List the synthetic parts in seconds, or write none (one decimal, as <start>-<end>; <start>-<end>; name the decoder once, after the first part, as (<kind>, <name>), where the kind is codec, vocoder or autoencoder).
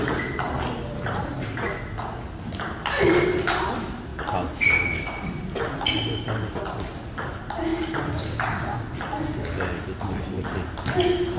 none